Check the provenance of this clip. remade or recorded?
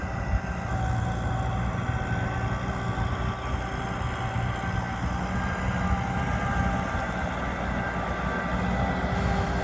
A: recorded